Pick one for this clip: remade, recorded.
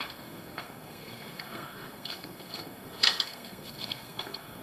remade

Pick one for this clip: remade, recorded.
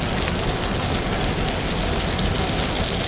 recorded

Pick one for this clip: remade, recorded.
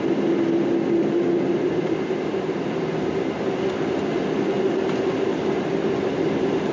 recorded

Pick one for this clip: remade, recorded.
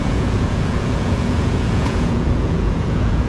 remade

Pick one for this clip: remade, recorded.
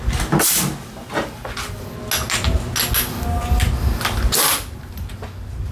recorded